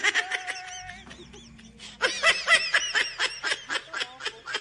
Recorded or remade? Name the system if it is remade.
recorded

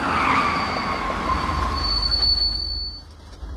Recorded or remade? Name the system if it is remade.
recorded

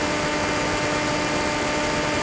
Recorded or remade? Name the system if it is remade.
recorded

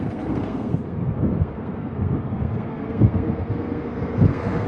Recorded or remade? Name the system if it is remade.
remade, codec, SNAC